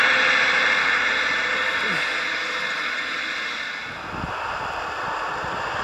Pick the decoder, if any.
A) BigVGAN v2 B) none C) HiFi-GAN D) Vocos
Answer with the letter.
B